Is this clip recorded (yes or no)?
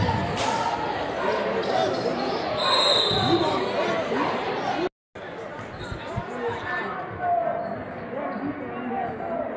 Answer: yes